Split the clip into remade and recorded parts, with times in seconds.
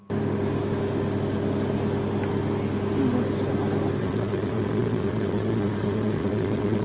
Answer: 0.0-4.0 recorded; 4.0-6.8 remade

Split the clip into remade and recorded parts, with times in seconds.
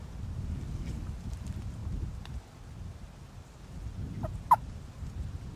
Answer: 0.0-5.6 recorded